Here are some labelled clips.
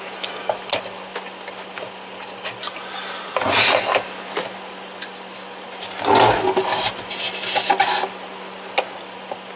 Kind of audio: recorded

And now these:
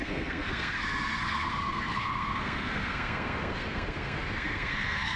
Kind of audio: remade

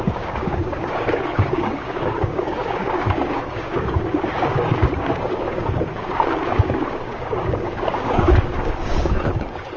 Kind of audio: remade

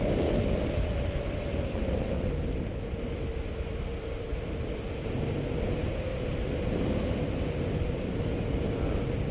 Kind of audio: recorded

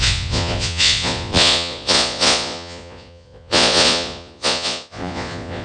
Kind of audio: remade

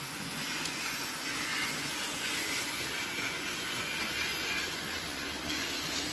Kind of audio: remade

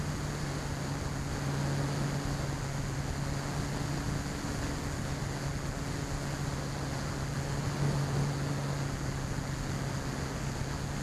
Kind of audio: recorded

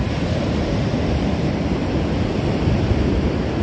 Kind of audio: remade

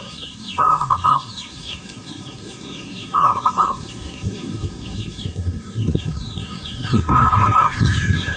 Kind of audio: remade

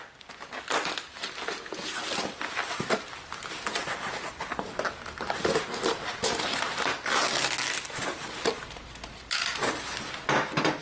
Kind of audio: recorded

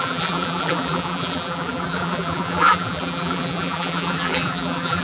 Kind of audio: remade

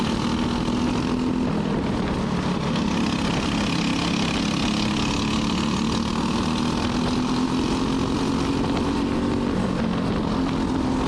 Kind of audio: recorded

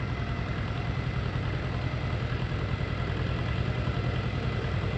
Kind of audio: recorded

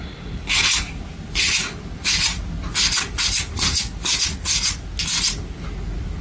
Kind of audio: recorded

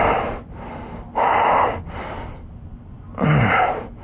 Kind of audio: recorded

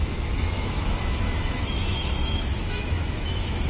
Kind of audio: remade